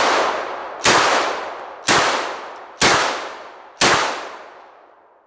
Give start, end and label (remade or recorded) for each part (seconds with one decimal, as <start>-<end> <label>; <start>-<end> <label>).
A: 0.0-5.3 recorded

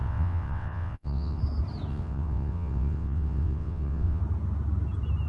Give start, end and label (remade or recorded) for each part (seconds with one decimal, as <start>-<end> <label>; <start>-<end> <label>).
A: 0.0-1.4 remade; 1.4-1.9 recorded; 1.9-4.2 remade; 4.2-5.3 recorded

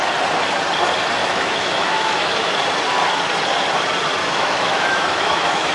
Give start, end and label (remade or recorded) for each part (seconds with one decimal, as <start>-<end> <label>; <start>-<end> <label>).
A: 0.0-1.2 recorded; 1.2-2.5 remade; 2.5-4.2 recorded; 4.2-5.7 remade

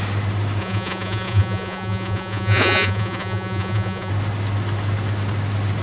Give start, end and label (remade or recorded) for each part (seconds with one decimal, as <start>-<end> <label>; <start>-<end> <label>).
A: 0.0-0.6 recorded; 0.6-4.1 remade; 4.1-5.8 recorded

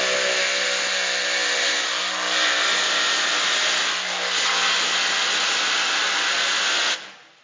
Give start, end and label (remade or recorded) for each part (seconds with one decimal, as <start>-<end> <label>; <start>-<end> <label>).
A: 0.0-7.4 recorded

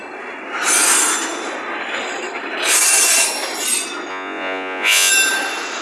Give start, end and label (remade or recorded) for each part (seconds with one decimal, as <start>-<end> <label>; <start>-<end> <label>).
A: 0.0-4.1 recorded; 4.1-5.1 remade; 5.1-5.8 recorded

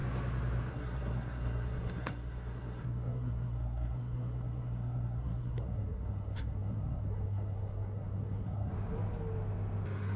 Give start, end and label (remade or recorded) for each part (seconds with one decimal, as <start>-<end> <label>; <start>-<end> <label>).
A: 0.0-0.7 recorded; 0.7-8.7 remade; 8.7-10.2 recorded